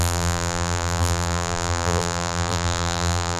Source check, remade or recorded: remade